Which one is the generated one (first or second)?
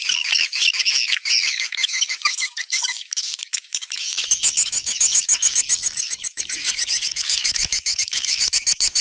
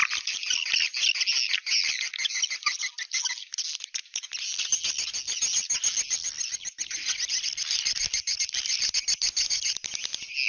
first